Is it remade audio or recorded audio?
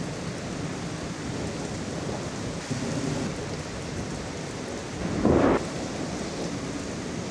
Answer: recorded